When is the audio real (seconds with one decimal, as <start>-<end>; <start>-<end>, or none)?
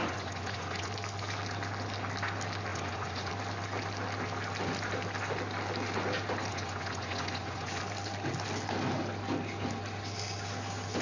0.9-2.7; 3.3-6.5; 7.8-11.0